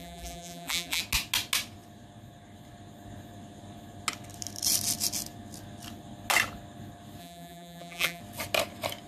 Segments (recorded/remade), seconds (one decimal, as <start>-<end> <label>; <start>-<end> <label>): 0.0-1.0 remade; 1.0-7.2 recorded; 7.2-8.2 remade; 8.2-9.1 recorded